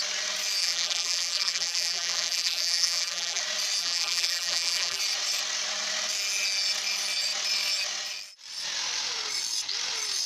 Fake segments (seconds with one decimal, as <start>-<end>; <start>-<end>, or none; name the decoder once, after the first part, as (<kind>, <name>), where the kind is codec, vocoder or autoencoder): 0.6-3.4 (vocoder, BigVGAN v2); 3.8-5.0